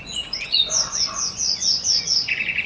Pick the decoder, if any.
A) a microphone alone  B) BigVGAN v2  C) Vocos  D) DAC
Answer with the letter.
C